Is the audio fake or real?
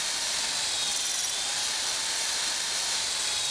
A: real